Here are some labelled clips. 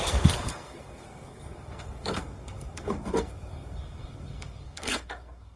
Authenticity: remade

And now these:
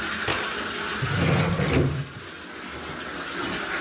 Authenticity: recorded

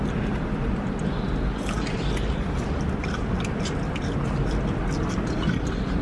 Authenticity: recorded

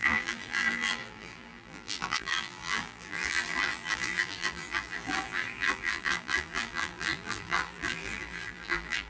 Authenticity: remade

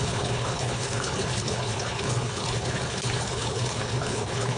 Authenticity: remade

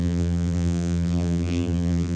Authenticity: remade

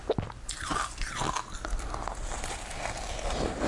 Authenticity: recorded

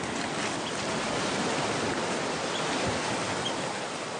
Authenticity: recorded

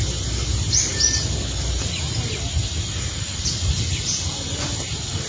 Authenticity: recorded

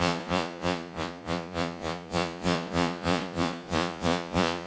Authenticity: remade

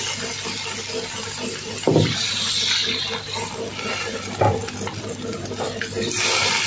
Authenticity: recorded